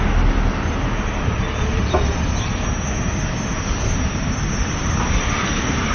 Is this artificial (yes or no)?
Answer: no